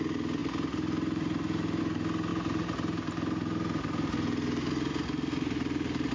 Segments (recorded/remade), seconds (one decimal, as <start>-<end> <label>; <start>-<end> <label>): 0.0-0.4 recorded; 0.4-1.8 remade; 1.8-2.3 recorded; 2.3-6.1 remade